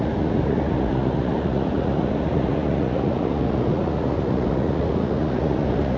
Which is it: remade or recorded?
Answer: remade